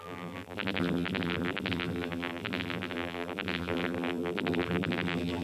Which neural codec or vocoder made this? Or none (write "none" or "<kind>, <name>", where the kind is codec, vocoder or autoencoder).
vocoder, BigVGAN v2